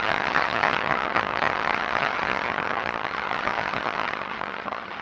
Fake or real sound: fake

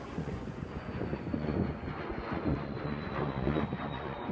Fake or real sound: fake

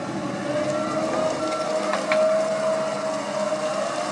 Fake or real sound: real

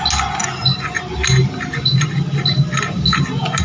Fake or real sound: real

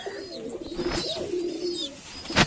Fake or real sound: real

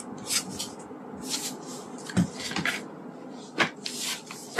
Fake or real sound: real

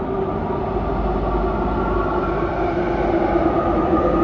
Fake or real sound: real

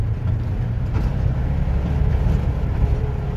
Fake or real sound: real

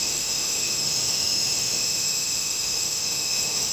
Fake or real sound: fake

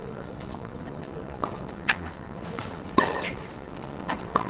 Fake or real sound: fake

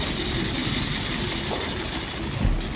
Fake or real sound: real